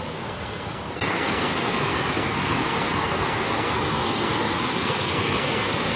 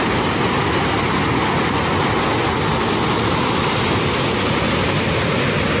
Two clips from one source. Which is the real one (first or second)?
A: second